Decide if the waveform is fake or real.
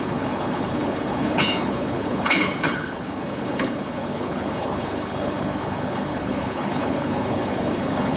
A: fake